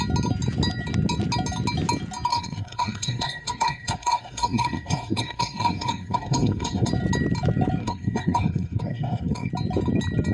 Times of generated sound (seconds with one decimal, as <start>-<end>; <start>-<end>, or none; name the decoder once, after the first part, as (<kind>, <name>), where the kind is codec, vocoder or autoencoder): 2.3-6.9 (codec, SNAC); 7.8-9.5